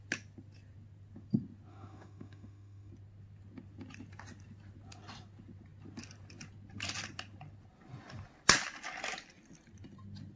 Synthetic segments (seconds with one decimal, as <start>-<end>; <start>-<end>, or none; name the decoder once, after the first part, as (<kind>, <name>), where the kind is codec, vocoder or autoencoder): 1.7-2.9 (autoencoder, DAC-VAE)